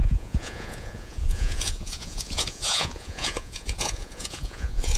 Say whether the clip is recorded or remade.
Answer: remade